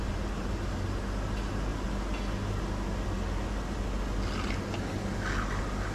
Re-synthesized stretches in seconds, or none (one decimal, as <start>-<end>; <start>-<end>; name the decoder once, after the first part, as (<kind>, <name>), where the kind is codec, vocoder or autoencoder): none